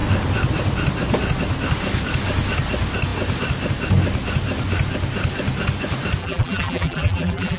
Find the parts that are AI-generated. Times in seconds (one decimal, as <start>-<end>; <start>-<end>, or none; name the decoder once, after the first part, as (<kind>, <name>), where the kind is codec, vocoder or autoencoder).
6.2-7.6 (vocoder, BigVGAN v2)